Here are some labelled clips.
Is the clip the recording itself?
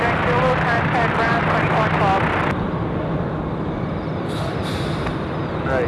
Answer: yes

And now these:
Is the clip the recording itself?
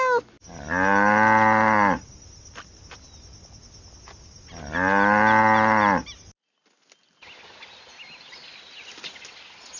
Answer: yes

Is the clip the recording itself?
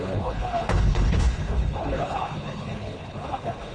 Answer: no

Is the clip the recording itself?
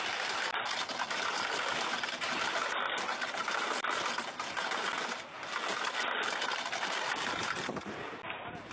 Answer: yes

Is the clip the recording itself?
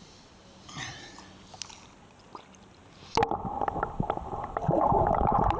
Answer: yes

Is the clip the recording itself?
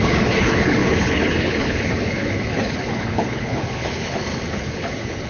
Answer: no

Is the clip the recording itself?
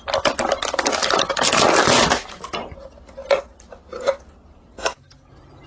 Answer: yes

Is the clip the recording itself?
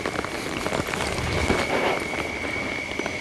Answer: yes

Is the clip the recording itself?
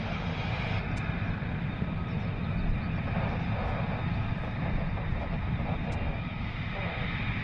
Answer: yes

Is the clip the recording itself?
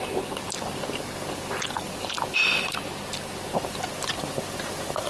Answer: yes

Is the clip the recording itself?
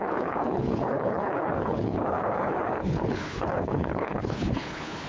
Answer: no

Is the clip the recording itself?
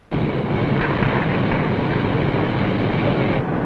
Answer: yes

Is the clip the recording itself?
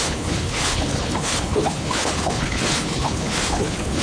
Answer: no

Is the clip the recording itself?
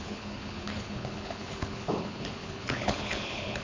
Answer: no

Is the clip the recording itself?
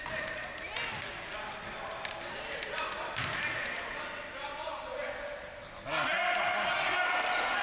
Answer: yes